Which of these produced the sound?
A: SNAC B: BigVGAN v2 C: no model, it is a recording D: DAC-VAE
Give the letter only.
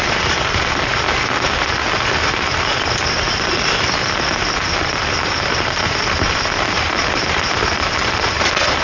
C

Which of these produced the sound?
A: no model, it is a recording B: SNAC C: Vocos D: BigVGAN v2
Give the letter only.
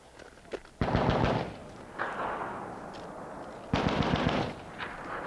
A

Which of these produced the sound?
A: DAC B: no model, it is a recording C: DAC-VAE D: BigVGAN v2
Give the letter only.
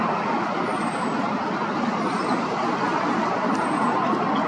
B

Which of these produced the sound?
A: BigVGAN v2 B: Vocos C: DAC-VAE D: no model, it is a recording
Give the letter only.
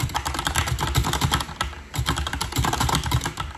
A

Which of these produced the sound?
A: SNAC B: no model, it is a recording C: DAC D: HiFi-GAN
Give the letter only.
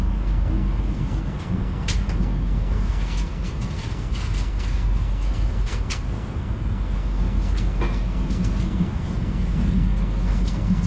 A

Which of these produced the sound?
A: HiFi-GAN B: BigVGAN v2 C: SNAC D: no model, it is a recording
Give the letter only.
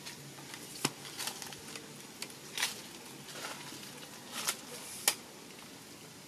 D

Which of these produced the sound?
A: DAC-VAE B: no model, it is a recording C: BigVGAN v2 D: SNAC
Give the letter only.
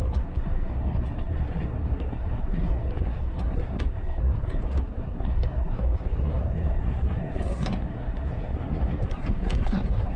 D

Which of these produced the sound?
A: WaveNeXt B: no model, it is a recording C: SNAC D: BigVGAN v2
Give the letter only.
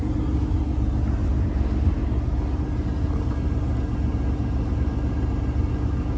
B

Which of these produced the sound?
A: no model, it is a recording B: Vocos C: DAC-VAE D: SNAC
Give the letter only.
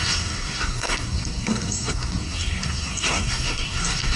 D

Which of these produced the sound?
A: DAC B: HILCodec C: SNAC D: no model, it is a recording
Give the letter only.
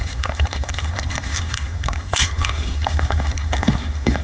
C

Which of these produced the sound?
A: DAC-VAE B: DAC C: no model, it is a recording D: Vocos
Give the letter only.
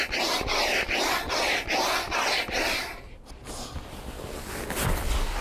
C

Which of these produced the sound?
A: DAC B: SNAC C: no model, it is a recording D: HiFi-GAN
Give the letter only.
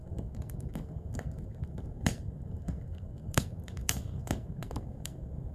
B